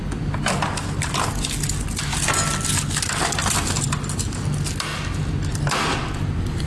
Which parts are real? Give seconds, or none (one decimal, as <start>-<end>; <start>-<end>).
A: 0.0-6.7